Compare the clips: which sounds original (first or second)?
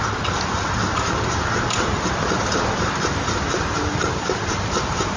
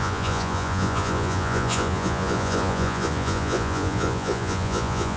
first